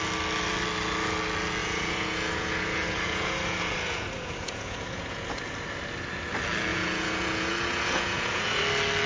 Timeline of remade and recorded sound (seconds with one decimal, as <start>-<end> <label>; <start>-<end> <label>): 0.0-1.6 recorded; 1.6-5.4 remade; 5.4-6.7 recorded; 6.7-8.6 remade; 8.6-9.1 recorded